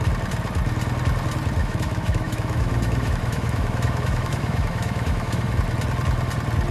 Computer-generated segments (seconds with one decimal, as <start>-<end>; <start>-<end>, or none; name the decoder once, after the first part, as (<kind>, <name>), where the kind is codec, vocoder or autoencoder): 1.6-5.6 (autoencoder, DAC-VAE)